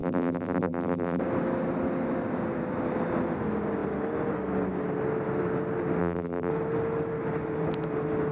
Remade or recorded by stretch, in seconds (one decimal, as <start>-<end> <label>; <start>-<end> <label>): 0.0-1.2 remade; 1.2-6.0 recorded; 6.0-6.5 remade; 6.5-8.3 recorded

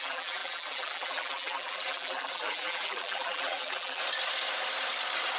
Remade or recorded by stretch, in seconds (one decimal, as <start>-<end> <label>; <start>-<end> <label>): 0.0-4.0 remade; 4.0-5.4 recorded

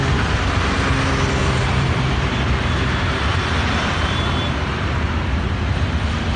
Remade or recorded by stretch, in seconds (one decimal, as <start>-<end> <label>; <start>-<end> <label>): 0.0-1.4 recorded; 1.4-5.2 remade; 5.2-6.4 recorded

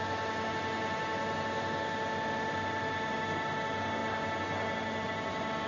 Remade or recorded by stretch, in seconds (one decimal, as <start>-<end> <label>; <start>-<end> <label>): 0.0-5.7 recorded

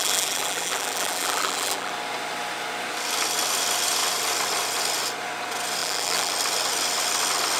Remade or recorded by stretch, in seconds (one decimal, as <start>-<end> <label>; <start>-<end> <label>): 0.0-1.9 remade; 1.9-5.8 recorded; 5.8-6.3 remade; 6.3-7.6 recorded

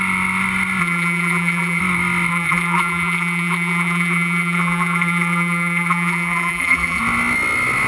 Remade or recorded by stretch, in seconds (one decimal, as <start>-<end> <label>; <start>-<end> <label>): 0.0-0.8 recorded; 0.8-1.8 remade; 1.8-2.3 recorded; 2.3-7.0 remade; 7.0-7.9 recorded

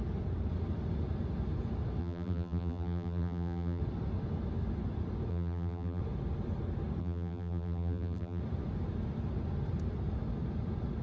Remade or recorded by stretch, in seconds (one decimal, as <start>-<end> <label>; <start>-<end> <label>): 0.0-2.0 recorded; 2.0-3.8 remade; 3.8-5.3 recorded; 5.3-6.0 remade; 6.0-7.0 recorded; 7.0-8.4 remade; 8.4-11.0 recorded